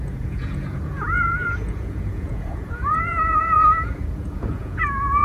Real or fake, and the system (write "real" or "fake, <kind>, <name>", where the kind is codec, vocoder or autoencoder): fake, vocoder, Vocos